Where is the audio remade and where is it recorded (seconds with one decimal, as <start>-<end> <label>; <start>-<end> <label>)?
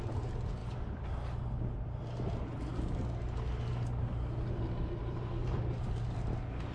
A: 0.0-6.7 recorded